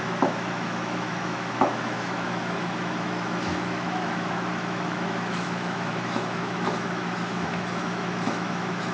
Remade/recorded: remade